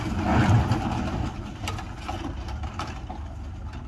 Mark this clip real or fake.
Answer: real